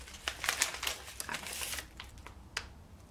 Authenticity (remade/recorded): recorded